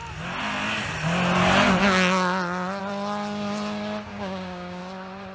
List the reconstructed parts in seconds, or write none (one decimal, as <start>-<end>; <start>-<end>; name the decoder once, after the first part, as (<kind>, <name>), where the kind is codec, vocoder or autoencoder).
4.1-4.8 (codec, DAC)